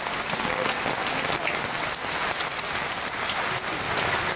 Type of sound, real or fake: real